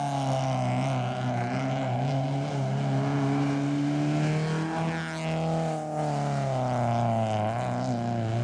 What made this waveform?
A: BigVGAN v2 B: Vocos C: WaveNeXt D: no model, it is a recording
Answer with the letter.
D